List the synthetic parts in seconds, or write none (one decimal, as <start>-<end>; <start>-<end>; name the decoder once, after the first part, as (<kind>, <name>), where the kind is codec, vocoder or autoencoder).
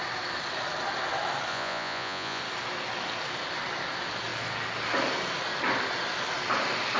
1.5-2.4 (vocoder, Vocos)